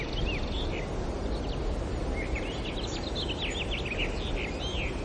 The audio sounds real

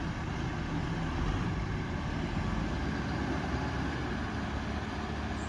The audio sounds real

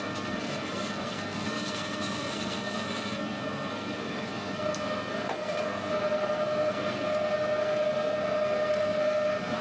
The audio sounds fake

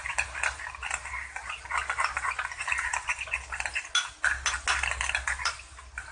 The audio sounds real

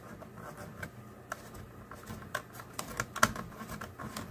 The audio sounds real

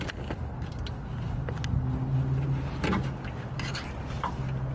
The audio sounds real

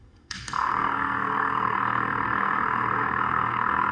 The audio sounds fake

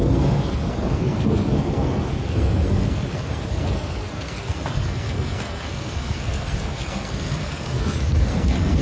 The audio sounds fake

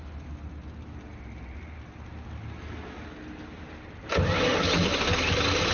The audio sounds real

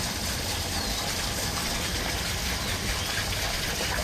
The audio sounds real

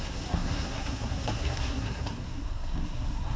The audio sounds fake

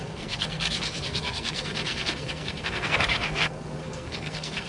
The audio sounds fake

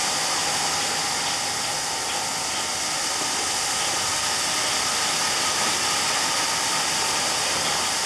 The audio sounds real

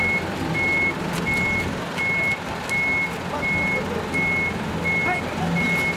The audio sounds real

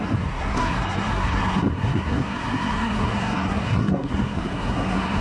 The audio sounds fake